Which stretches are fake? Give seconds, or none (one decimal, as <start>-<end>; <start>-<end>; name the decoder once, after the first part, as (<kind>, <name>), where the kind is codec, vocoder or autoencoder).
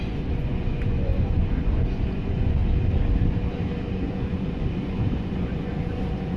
0.0-2.6 (vocoder, Vocos); 3.9-6.4